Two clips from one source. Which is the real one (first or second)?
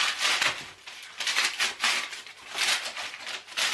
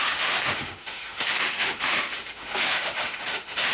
first